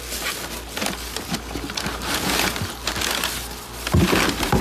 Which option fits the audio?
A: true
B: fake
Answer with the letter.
A